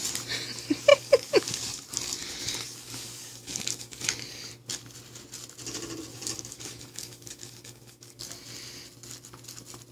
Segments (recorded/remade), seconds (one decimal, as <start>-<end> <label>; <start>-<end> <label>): 0.0-0.9 recorded; 0.9-1.8 remade; 1.8-2.2 recorded; 2.2-4.5 remade; 4.5-6.1 recorded; 6.1-8.2 remade; 8.2-9.9 recorded